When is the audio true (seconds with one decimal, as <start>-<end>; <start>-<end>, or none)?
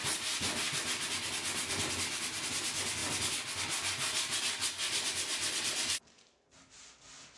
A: 0.0-7.4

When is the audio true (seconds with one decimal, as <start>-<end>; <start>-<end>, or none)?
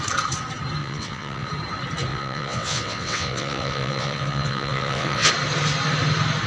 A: 0.0-0.8; 1.5-2.1; 5.3-6.5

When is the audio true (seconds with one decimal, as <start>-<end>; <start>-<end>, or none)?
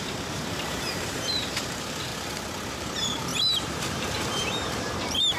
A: 2.1-2.7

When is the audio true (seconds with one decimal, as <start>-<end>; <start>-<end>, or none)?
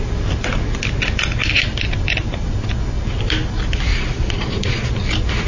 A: 0.0-3.9; 4.9-5.5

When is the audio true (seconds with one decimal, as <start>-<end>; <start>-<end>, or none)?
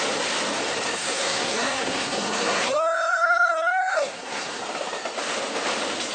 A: 0.0-1.0; 4.6-6.1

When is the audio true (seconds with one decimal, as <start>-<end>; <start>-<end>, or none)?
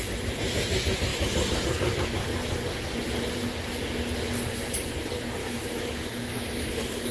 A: 0.0-5.4